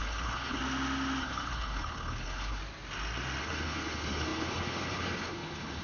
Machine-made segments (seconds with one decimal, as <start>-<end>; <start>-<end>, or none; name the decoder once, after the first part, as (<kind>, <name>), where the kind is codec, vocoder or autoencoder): 0.0-0.6 (codec, HILCodec); 1.2-2.6; 3.4-5.8